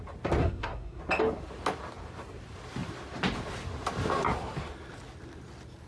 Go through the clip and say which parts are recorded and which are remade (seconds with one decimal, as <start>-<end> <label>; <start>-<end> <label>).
0.0-0.4 recorded; 0.4-1.0 remade; 1.0-5.9 recorded